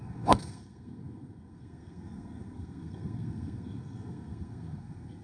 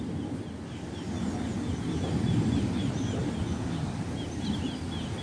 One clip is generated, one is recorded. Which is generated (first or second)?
first